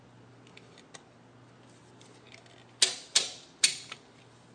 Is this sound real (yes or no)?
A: yes